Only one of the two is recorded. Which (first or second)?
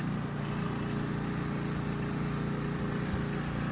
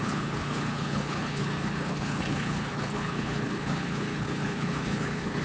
first